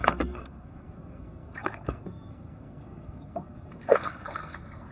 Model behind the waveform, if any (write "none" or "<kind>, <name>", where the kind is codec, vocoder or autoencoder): codec, SNAC